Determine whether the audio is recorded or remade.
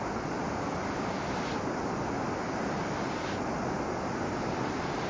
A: recorded